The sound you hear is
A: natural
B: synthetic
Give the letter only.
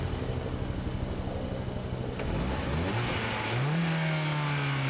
A